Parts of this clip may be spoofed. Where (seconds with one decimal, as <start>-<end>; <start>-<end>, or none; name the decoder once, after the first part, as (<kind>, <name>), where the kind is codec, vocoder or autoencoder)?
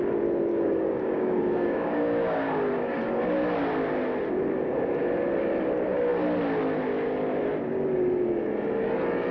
0.5-2.5 (codec, DAC)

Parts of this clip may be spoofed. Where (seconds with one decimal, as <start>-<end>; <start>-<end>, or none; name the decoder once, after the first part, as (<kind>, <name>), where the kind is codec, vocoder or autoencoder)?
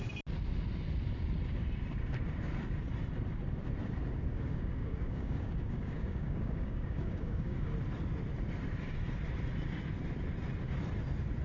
4.3-7.7 (codec, DAC)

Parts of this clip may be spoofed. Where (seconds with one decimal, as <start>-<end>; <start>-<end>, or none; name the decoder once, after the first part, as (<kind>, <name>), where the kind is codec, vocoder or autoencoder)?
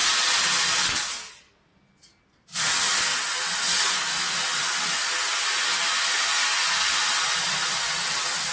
none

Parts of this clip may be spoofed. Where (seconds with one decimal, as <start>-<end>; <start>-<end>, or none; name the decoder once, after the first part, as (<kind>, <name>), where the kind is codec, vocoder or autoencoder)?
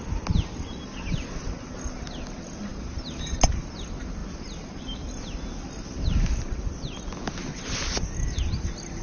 none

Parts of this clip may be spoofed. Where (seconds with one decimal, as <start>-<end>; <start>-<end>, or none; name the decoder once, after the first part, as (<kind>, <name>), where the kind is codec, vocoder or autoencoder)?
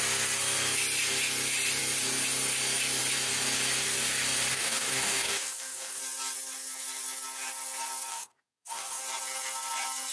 4.5-6.0 (codec, DAC); 8.1-9.0